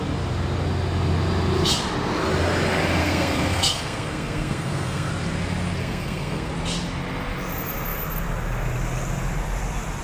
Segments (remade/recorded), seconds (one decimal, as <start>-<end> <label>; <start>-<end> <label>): 0.0-3.0 recorded; 3.0-5.1 remade; 5.1-5.8 recorded; 5.8-6.5 remade; 6.5-10.0 recorded